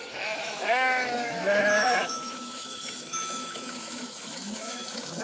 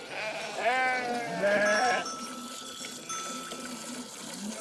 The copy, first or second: first